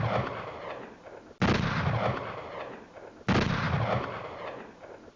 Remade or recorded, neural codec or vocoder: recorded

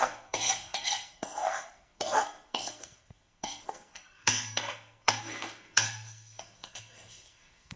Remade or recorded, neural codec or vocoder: remade, codec, SNAC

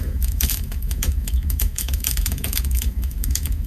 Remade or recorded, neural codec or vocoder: remade, autoencoder, DAC-VAE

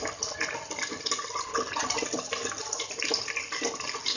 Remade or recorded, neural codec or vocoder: recorded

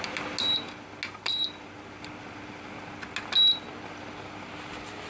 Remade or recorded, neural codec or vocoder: recorded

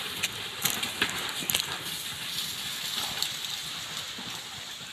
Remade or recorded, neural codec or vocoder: recorded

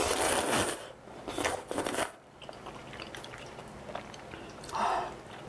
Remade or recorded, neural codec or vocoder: recorded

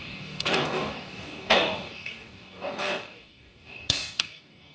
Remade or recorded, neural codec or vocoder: remade, codec, DAC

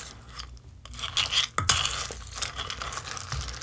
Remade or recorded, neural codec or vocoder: recorded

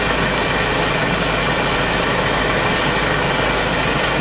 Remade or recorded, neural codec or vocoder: recorded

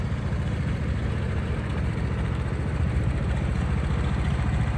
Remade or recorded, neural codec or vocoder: remade, vocoder, BigVGAN v2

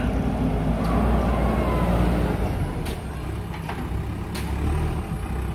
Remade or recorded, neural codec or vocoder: recorded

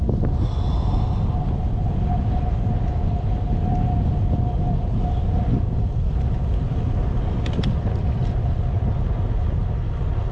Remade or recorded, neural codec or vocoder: recorded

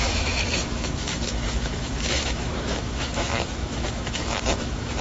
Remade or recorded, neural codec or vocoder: remade, autoencoder, DAC-VAE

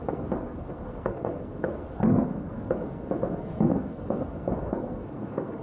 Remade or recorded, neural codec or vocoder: remade, codec, SNAC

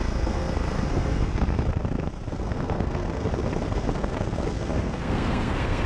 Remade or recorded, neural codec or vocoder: remade, codec, SNAC